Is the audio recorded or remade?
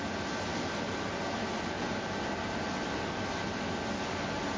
recorded